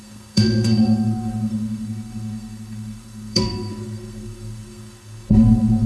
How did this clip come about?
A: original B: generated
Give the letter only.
B